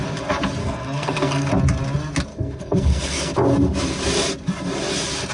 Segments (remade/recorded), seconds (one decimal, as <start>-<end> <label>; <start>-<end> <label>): 0.0-0.6 recorded; 0.6-1.5 remade; 1.5-2.3 recorded; 2.3-3.3 remade; 3.3-5.3 recorded

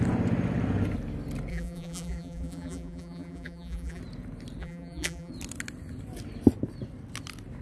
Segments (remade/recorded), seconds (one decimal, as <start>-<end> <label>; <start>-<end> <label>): 0.0-1.5 recorded; 1.5-4.0 remade; 4.0-4.6 recorded; 4.6-5.3 remade; 5.3-7.6 recorded